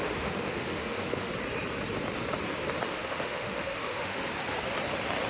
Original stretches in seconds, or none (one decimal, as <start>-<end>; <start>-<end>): 1.3-2.9; 4.2-5.3